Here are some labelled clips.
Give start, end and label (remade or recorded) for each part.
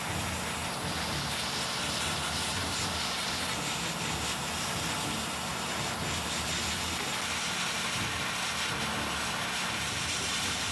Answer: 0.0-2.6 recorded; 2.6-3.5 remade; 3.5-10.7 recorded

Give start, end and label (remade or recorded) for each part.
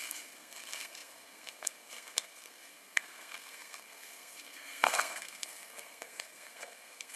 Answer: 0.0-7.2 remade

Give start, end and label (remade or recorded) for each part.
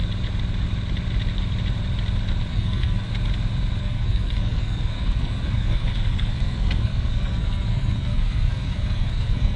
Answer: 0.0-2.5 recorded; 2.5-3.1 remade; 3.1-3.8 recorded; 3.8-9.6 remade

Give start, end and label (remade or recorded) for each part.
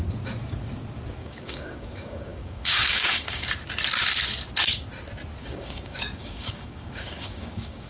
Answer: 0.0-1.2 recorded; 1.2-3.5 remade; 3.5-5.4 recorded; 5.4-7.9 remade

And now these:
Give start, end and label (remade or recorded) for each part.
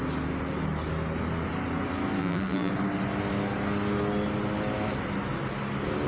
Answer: 0.0-2.2 recorded; 2.2-2.7 remade; 2.7-6.1 recorded